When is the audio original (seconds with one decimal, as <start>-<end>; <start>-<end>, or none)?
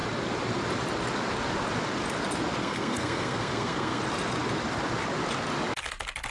0.0-2.6; 4.0-6.3